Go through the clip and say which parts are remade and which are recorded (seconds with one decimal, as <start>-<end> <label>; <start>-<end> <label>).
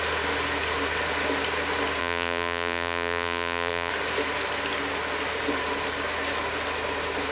0.0-2.0 recorded; 2.0-3.9 remade; 3.9-7.3 recorded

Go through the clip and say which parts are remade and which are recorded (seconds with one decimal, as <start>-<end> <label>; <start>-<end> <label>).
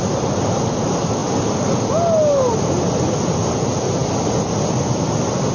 0.0-5.5 recorded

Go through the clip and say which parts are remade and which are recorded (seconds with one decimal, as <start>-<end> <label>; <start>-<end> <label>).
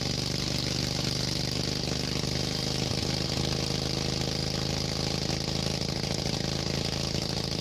0.0-7.6 recorded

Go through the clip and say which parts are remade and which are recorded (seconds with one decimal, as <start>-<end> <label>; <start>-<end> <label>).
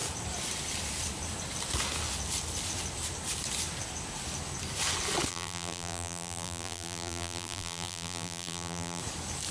0.0-5.3 recorded; 5.3-9.0 remade; 9.0-9.5 recorded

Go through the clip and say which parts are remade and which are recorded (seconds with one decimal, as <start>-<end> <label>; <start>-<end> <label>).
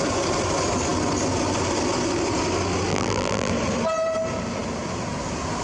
0.0-2.9 recorded; 2.9-3.5 remade; 3.5-5.6 recorded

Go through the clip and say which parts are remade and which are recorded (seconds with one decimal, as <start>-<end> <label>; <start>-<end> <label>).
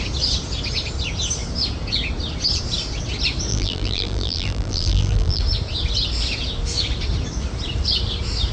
0.0-3.5 recorded; 3.5-5.4 remade; 5.4-8.5 recorded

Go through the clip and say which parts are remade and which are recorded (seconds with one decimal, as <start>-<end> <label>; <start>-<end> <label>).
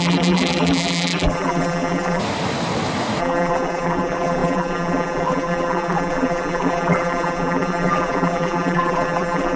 0.0-2.2 remade; 2.2-3.2 recorded; 3.2-9.6 remade